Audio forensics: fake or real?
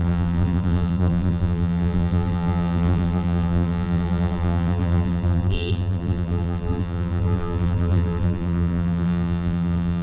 fake